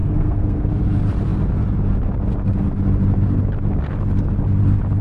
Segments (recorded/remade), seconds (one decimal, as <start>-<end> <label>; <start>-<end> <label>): 0.0-0.7 remade; 0.7-5.0 recorded